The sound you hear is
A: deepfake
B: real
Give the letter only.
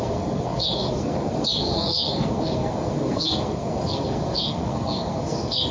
A